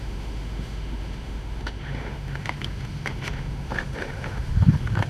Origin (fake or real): fake